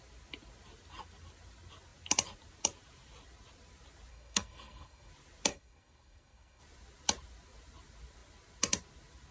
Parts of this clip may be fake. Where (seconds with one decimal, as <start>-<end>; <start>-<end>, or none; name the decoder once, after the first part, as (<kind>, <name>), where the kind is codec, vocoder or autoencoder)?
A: 4.1-5.1 (codec, SNAC); 5.5-6.6